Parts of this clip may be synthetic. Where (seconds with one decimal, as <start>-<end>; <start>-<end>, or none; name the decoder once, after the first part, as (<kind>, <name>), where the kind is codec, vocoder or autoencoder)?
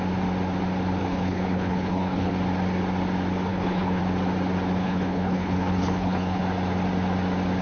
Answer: 1.0-2.3 (codec, HILCodec); 3.5-4.0; 4.8-6.4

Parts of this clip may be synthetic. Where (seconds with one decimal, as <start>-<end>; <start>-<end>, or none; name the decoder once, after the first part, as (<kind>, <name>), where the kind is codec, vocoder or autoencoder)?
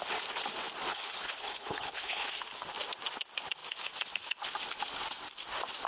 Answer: 0.9-2.3 (codec, HILCodec)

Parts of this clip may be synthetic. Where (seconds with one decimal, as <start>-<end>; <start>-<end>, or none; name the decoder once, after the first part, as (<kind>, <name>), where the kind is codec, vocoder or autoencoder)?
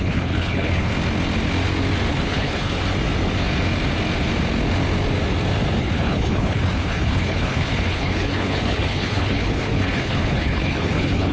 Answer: 0.0-0.9 (codec, HILCodec); 2.1-2.8; 5.8-11.3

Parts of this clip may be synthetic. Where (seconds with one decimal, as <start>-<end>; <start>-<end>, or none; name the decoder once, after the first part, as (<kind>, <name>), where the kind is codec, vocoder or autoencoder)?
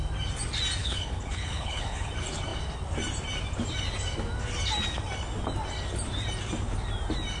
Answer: 0.8-2.1 (codec, HILCodec)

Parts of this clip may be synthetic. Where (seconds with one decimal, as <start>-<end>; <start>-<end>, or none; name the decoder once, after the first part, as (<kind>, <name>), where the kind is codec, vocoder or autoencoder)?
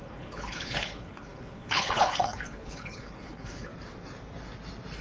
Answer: 0.0-3.7 (codec, HILCodec)